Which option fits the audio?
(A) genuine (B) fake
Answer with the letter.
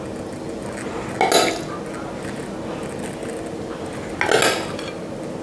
A